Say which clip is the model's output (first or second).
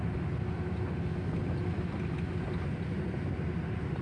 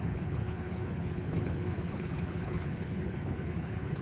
second